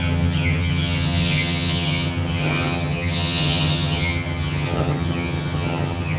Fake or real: fake